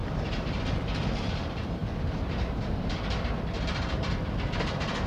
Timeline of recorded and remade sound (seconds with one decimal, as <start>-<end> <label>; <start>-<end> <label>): 0.0-5.1 recorded